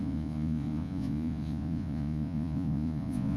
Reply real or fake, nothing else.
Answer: fake